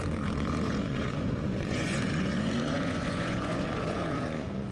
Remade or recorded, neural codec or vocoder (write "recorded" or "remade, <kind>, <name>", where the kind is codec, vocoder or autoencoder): remade, vocoder, Vocos